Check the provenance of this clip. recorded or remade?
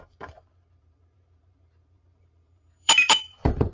remade